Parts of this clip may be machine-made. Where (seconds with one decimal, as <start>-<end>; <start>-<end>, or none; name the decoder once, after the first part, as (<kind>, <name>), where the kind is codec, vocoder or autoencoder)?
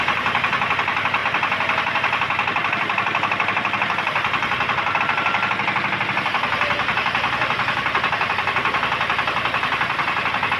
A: 1.2-5.0 (vocoder, BigVGAN v2)